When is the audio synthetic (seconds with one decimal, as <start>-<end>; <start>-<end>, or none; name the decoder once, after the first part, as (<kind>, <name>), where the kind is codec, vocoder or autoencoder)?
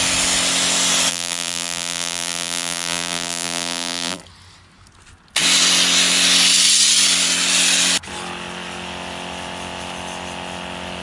1.1-4.2 (vocoder, BigVGAN v2)